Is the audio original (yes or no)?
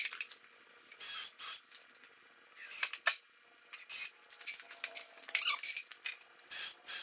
no